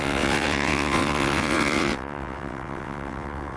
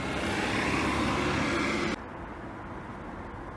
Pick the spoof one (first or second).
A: first